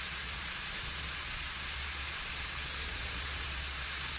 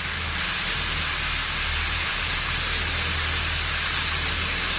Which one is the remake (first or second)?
first